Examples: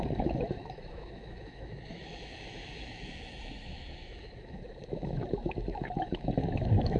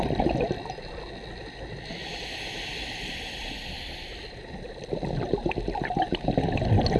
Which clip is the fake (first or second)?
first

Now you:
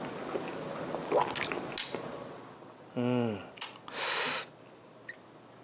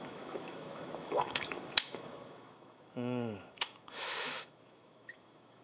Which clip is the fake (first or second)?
second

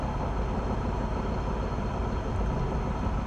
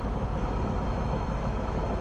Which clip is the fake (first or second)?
second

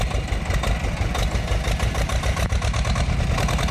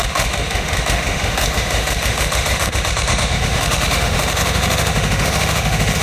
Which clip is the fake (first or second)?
second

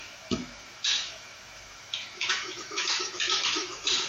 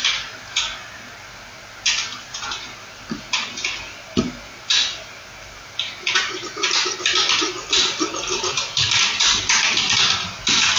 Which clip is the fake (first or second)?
first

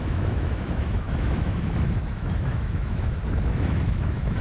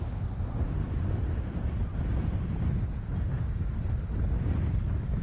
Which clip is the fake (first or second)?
first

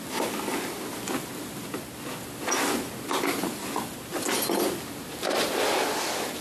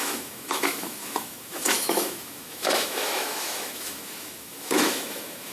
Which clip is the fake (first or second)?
second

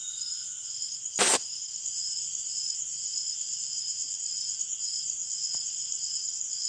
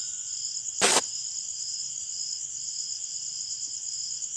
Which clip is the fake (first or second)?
first